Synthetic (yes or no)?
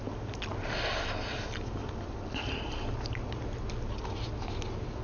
no